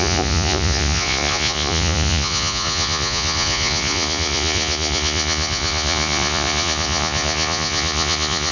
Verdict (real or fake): fake